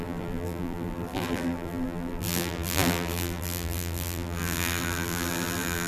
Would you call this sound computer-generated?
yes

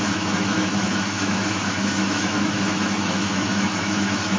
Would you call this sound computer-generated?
yes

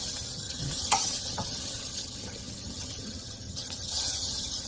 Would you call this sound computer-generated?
yes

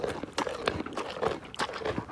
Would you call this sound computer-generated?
no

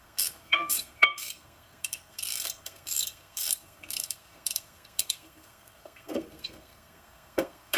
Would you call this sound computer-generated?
yes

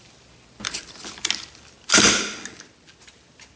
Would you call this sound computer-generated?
no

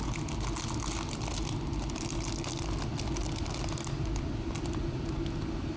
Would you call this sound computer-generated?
no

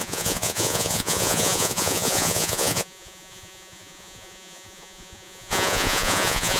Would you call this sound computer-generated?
yes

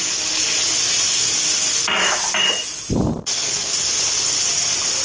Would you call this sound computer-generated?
no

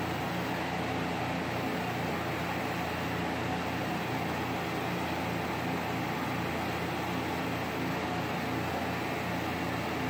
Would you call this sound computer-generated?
no